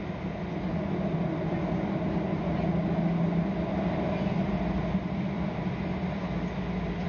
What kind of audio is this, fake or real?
real